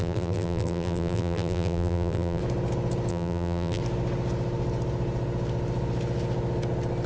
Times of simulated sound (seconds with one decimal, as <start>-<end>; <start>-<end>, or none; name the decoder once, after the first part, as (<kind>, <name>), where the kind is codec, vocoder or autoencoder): 0.0-2.4 (vocoder, BigVGAN v2); 3.1-3.8